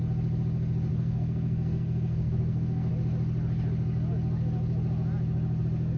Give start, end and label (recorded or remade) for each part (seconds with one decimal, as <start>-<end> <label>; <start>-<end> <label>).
0.0-0.9 recorded; 0.9-2.9 remade; 2.9-6.0 recorded